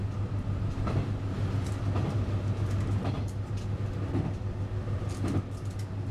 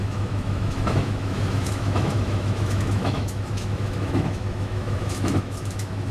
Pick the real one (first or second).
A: first